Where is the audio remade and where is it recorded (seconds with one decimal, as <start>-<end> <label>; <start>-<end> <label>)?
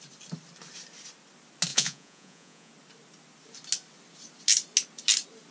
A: 0.0-1.7 recorded; 1.7-2.7 remade; 2.7-5.5 recorded